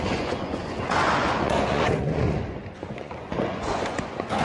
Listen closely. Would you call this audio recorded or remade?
remade